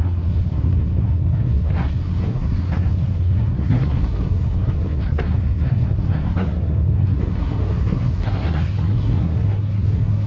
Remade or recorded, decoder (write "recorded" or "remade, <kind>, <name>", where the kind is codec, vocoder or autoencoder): remade, codec, SNAC